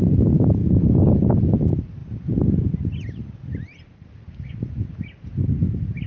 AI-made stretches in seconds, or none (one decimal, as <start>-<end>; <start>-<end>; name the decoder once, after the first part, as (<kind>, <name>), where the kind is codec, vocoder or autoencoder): none